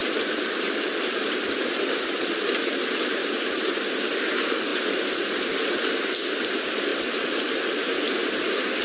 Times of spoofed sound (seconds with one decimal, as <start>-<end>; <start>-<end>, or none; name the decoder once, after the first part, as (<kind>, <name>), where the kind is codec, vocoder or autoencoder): 0.0-4.3 (vocoder, BigVGAN v2); 6.9-7.5